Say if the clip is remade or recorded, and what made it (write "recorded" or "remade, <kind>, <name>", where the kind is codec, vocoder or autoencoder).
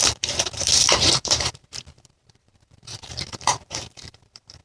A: remade, vocoder, BigVGAN v2